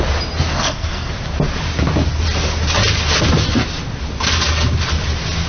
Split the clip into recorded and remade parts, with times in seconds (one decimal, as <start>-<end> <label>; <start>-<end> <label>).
0.0-0.5 recorded; 0.5-1.1 remade; 1.1-5.5 recorded